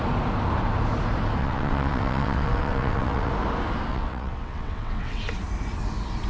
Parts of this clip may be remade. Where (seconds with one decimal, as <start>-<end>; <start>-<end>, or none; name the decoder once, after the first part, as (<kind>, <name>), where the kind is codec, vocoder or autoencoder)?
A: 1.4-3.3 (vocoder, WaveNeXt); 3.9-5.2